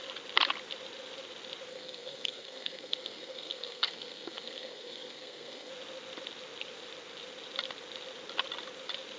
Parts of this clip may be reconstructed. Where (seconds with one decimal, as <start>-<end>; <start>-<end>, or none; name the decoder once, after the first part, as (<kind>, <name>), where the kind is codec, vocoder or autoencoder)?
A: 1.7-5.7 (codec, SNAC)